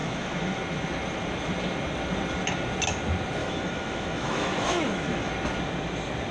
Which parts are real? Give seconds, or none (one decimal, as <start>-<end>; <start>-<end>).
0.6-3.4; 5.3-6.3